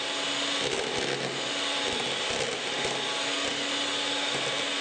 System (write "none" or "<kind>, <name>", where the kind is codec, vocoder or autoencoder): none